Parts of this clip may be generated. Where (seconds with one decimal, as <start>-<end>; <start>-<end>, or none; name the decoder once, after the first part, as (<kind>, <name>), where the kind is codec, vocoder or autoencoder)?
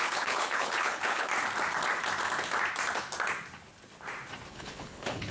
0.0-1.3 (codec, HILCodec); 4.5-5.3